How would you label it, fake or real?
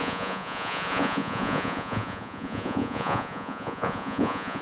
fake